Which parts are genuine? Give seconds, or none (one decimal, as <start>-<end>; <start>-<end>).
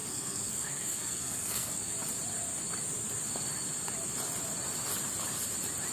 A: 1.9-5.9